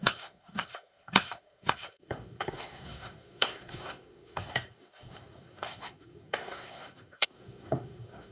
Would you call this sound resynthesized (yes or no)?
yes